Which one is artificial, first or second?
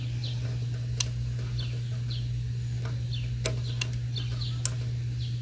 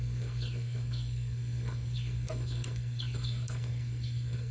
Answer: second